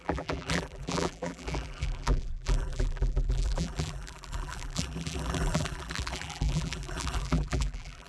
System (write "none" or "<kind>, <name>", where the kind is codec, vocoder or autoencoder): vocoder, BigVGAN v2